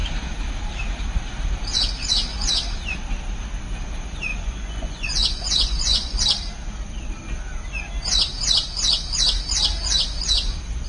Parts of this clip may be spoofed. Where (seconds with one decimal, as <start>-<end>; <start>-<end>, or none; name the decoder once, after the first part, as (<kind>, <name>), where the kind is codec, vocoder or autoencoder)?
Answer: 4.3-6.2 (vocoder, Vocos)